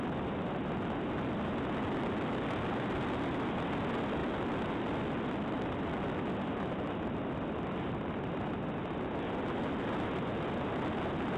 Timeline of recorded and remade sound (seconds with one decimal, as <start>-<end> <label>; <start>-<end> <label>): 0.0-4.2 recorded; 4.2-8.1 remade; 8.1-11.4 recorded